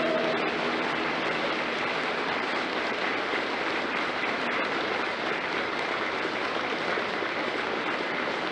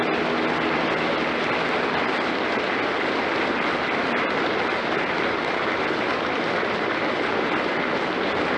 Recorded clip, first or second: second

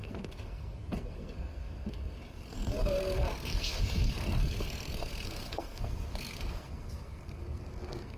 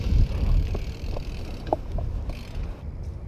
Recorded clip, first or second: second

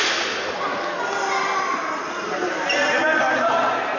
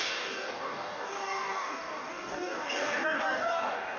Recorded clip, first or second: first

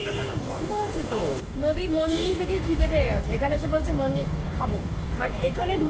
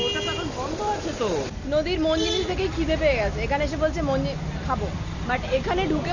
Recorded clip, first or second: second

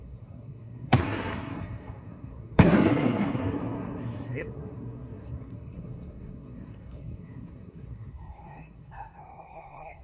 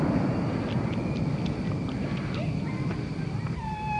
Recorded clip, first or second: second